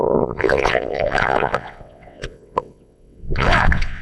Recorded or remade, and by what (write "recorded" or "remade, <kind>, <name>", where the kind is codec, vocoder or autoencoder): remade, vocoder, WaveNeXt